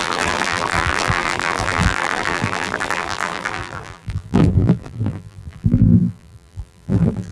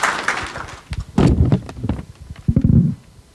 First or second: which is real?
second